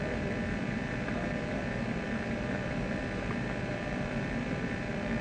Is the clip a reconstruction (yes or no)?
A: yes